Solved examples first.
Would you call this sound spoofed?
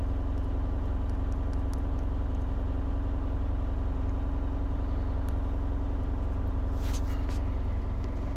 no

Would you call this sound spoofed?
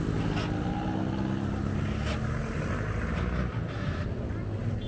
no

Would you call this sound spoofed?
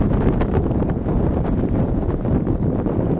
yes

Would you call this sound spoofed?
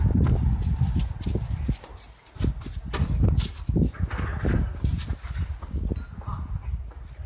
no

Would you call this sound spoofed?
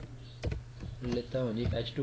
no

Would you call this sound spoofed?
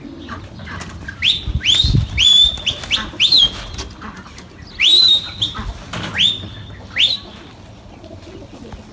no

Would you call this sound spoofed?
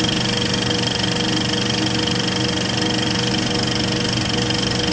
no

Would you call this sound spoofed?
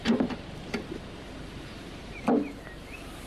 yes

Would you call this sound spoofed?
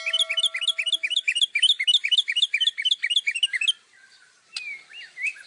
no